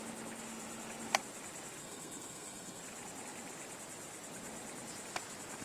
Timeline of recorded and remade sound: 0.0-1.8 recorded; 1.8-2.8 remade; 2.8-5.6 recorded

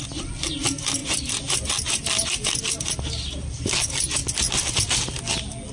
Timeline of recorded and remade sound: 0.0-5.7 recorded